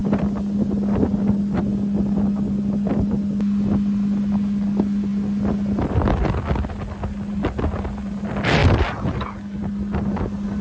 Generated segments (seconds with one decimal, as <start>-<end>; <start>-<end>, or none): none